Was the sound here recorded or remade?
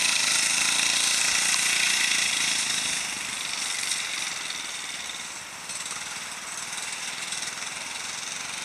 remade